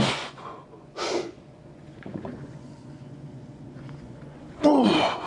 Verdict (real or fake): fake